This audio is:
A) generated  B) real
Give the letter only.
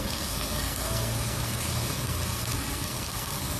A